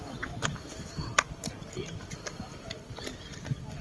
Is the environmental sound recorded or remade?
recorded